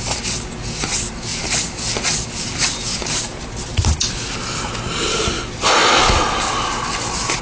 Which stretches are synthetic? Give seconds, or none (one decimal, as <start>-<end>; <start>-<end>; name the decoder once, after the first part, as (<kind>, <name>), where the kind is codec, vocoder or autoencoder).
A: none